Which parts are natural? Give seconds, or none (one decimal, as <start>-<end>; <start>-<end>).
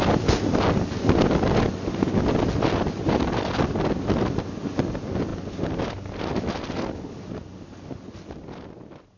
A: 0.0-9.2